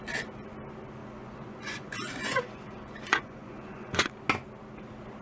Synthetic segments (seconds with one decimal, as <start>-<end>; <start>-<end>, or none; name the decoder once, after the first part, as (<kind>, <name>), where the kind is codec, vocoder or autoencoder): 1.0-4.1 (vocoder, Vocos)

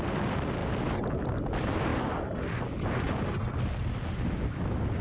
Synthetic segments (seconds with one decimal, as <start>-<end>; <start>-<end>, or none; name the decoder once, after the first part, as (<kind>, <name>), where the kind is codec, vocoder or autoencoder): none

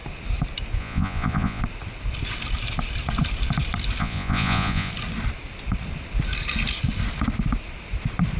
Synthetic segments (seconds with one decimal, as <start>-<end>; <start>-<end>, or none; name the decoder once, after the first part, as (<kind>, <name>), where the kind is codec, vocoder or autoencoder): 0.8-1.6 (vocoder, Vocos); 4.0-4.9

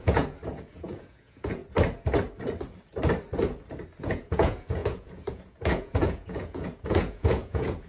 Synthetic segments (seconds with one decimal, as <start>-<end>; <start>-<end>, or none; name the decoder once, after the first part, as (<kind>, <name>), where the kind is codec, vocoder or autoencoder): 0.0-1.6 (vocoder, Vocos); 4.0-7.9